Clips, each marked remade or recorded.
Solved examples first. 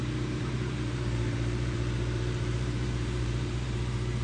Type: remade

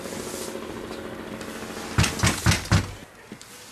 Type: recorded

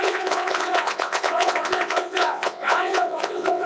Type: remade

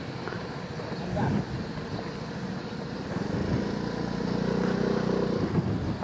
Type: recorded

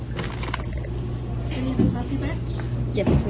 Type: recorded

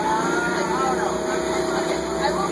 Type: recorded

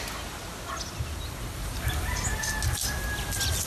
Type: recorded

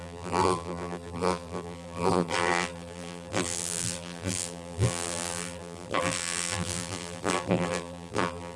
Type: remade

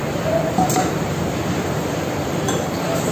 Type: remade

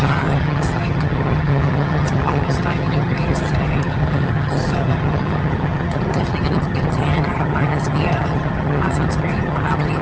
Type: remade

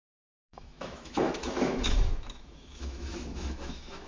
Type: remade